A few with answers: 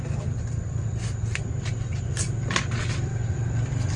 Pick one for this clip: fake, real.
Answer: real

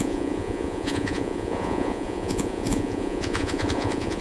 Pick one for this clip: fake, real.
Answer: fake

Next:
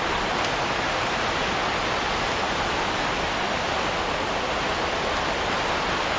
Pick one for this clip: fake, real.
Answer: real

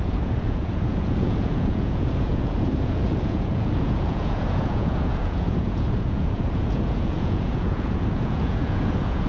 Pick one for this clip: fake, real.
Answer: fake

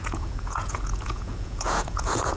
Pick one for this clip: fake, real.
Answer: fake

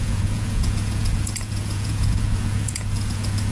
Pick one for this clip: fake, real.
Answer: fake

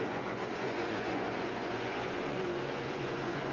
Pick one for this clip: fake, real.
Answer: fake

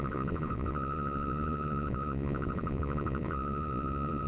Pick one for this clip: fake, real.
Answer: fake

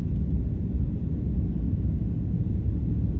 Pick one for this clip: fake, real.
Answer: real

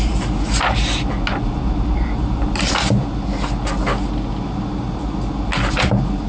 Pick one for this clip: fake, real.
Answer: real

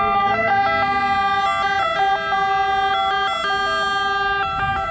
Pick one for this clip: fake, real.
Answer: real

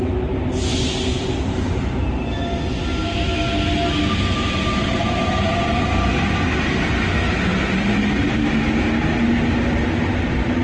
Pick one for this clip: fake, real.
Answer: real